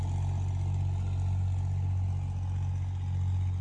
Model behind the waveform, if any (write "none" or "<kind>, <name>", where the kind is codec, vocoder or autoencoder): none